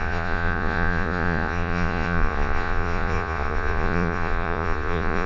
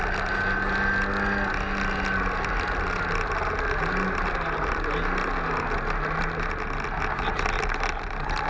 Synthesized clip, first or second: first